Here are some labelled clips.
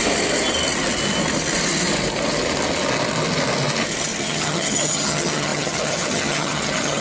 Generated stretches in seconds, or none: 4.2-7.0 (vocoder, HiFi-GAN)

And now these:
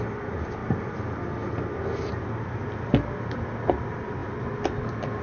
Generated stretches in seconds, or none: none

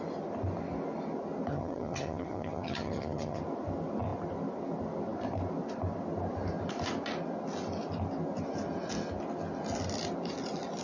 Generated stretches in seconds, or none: 1.5-3.4 (vocoder, HiFi-GAN)